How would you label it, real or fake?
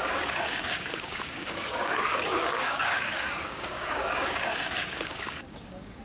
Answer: fake